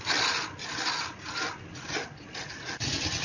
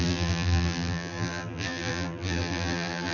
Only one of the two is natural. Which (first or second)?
first